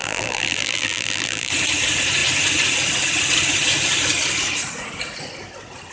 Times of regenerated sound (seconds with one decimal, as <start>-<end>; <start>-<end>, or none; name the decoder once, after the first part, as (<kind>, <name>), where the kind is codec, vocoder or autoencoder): 0.0-1.5 (vocoder, BigVGAN v2)